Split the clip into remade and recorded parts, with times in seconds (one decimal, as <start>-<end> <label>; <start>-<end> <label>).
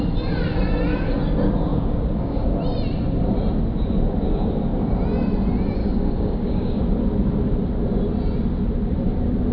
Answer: 0.0-1.7 recorded; 1.7-2.4 remade; 2.4-5.8 recorded; 5.8-6.8 remade; 6.8-9.5 recorded